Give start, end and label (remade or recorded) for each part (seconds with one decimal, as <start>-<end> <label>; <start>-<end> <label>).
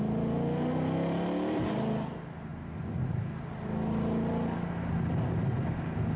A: 0.0-6.2 recorded